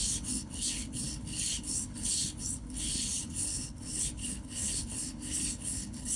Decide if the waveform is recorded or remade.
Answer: remade